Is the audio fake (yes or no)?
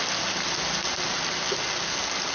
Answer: no